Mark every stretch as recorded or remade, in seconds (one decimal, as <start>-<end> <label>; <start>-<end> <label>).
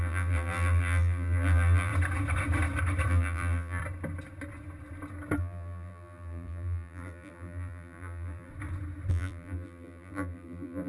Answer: 0.0-1.9 remade; 1.9-3.1 recorded; 3.1-3.8 remade; 3.8-5.4 recorded; 5.4-8.5 remade; 8.5-9.1 recorded; 9.1-10.9 remade